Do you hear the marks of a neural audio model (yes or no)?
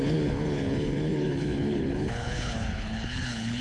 yes